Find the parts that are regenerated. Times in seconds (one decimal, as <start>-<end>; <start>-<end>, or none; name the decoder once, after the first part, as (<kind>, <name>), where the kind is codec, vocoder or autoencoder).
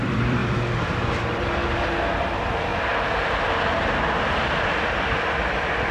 0.0-0.4 (vocoder, BigVGAN v2); 1.1-1.6; 2.2-2.7; 4.3-5.9